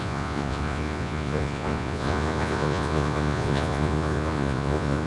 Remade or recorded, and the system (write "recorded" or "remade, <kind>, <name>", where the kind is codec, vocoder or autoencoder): remade, vocoder, Vocos